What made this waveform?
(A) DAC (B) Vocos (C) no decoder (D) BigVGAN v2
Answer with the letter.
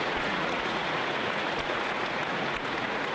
B